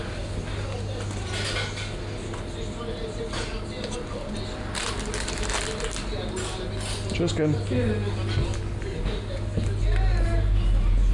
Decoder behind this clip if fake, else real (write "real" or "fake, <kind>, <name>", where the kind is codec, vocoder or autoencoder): real